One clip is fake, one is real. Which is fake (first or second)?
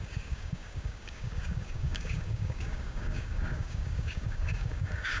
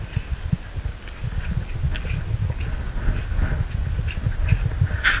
first